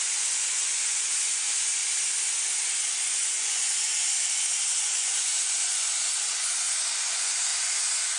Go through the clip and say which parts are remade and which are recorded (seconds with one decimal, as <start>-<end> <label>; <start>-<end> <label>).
0.0-1.8 remade; 1.8-3.0 recorded; 3.0-3.9 remade; 3.9-4.7 recorded; 4.7-8.2 remade